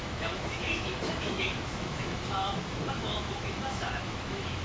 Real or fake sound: fake